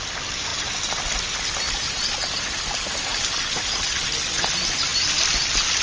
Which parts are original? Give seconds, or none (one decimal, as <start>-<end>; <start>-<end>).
0.0-5.8